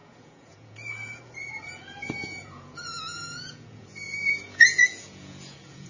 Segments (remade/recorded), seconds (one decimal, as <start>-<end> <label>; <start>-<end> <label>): 0.0-5.9 remade